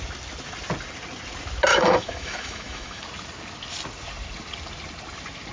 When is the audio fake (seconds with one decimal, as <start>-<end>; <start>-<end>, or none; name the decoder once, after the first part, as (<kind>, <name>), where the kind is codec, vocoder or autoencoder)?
1.7-3.0 (autoencoder, DAC-VAE)